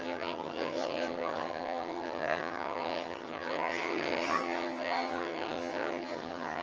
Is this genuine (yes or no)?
no